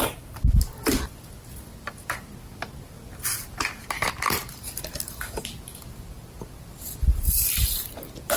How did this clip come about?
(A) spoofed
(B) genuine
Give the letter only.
B